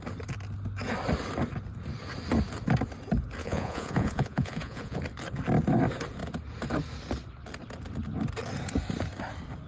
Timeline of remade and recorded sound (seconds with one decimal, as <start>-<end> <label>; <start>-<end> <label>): 0.0-3.4 recorded; 3.4-5.0 remade; 5.0-9.7 recorded